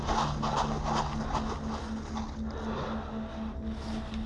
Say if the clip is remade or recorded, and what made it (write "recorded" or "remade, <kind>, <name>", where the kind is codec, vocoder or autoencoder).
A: recorded